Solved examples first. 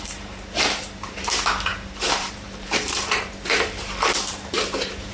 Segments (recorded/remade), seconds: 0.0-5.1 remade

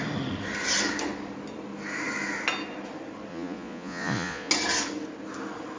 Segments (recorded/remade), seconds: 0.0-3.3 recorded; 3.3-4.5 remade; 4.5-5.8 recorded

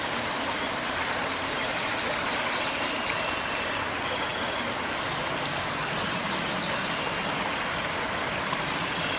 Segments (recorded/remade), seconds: 0.0-9.2 recorded

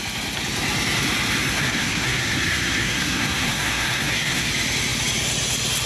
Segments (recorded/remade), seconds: 0.0-1.5 recorded; 1.5-4.5 remade; 4.5-5.9 recorded

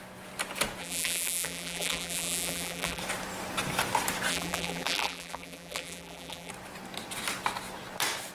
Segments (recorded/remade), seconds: 0.0-0.8 recorded; 0.8-3.0 remade; 3.0-4.3 recorded; 4.3-6.5 remade; 6.5-8.3 recorded

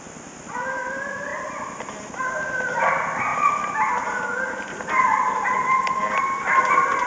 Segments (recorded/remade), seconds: 0.0-7.1 recorded

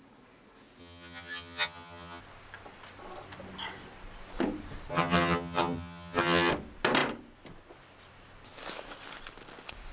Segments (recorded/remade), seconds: 0.0-0.8 recorded; 0.8-2.2 remade; 2.2-4.9 recorded; 4.9-6.5 remade; 6.5-9.9 recorded